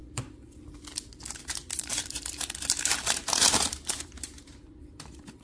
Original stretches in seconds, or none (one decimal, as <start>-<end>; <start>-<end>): 0.0-1.4